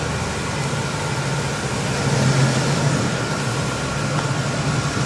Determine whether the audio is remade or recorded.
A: recorded